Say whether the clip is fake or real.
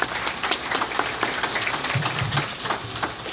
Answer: real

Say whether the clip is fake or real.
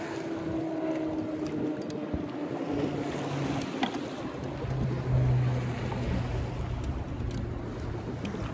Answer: real